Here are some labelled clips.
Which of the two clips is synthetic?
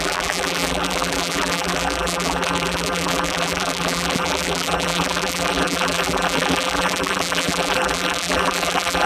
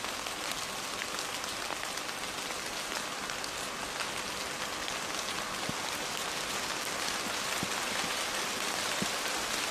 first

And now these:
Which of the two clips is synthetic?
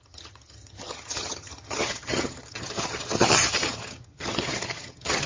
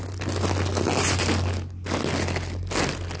first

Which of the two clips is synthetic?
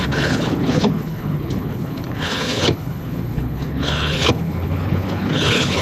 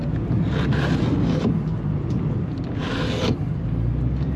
first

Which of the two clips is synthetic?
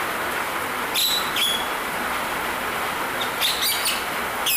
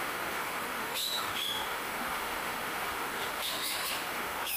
second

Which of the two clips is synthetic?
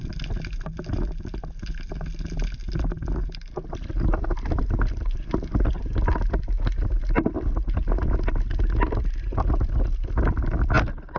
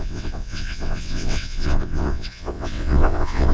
second